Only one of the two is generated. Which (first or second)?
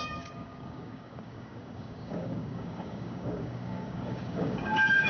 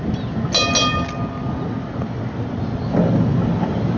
first